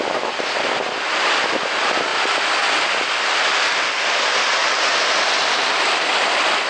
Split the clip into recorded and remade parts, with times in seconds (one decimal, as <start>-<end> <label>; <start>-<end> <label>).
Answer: 0.0-6.7 recorded